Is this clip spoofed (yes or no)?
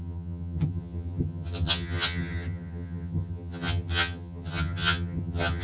yes